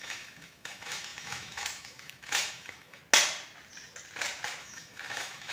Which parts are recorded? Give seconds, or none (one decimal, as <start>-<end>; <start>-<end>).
3.0-4.6

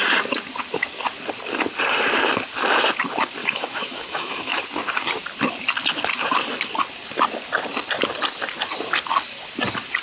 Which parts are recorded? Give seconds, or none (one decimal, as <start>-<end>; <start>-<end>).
0.0-3.4; 4.6-10.0

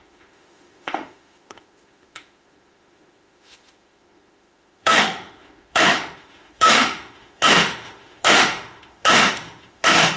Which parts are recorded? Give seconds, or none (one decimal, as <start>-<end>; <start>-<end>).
none

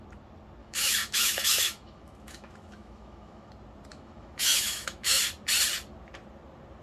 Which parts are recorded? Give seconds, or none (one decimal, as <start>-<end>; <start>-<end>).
0.0-0.6; 3.5-3.9; 5.2-6.8

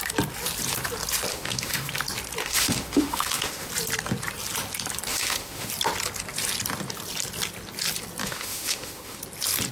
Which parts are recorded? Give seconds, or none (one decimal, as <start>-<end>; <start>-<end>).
0.0-1.3; 1.9-2.4; 3.7-5.1; 5.7-8.2; 9.2-9.7

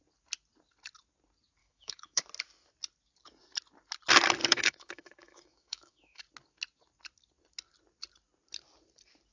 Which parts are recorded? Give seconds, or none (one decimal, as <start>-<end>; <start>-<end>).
0.0-1.6; 2.2-4.4; 6.2-9.3

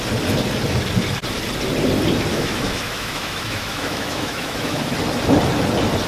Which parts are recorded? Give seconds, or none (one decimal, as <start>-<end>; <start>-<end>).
0.0-2.3; 4.9-6.1